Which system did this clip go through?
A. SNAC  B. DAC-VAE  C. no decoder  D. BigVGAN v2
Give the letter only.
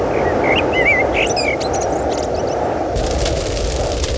C